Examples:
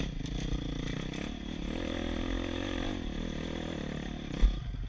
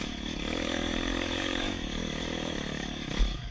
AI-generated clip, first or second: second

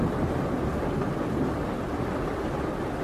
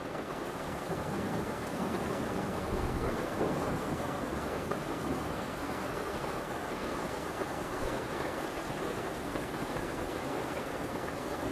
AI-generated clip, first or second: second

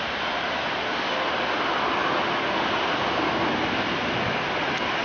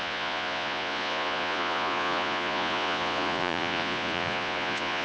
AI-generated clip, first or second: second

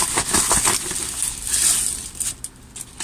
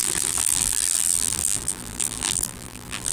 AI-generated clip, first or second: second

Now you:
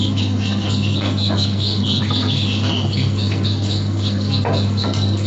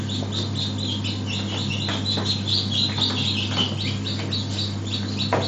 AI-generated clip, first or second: first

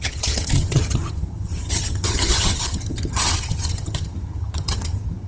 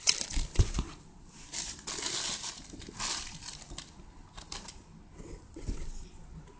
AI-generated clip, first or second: first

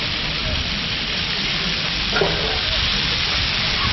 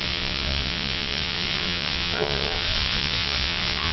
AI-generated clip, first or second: second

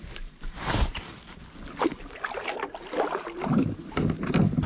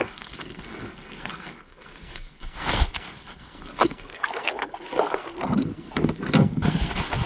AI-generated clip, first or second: second